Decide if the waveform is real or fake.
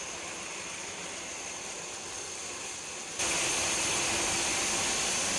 real